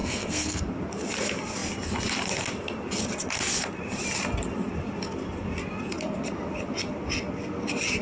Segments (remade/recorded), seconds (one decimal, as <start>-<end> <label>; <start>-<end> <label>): 0.0-0.6 remade; 0.6-8.0 recorded